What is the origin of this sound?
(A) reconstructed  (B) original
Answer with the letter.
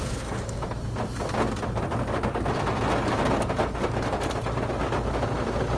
B